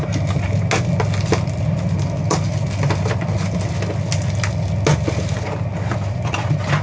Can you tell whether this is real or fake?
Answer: real